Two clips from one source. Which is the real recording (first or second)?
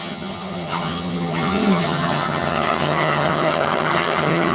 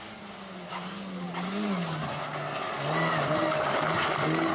second